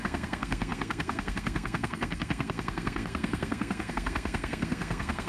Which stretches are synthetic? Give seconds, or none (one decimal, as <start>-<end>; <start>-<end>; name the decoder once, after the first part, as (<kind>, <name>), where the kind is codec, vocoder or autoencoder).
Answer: 0.0-5.3 (codec, SNAC)